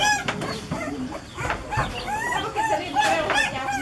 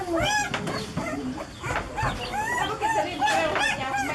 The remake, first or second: first